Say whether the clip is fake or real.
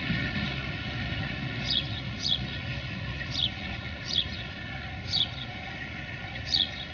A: fake